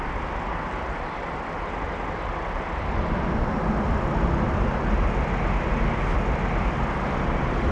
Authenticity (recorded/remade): recorded